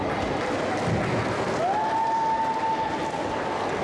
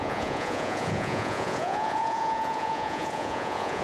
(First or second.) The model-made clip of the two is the second